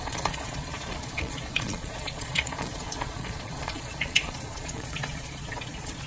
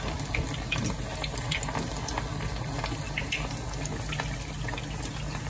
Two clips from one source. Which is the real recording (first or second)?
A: second